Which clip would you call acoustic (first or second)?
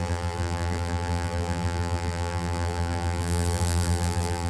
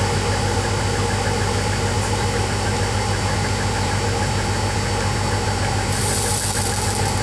second